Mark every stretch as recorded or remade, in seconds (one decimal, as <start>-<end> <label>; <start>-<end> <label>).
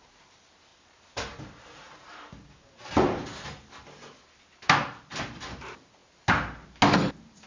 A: 0.0-0.7 recorded; 0.7-2.7 remade; 2.7-7.5 recorded